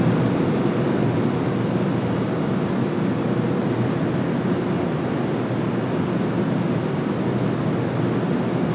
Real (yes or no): yes